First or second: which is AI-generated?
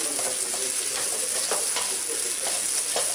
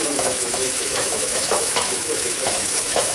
second